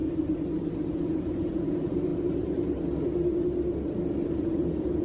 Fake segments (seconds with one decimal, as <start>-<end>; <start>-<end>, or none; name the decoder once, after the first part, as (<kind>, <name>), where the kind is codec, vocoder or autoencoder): 0.9-2.1 (vocoder, Vocos); 4.4-5.0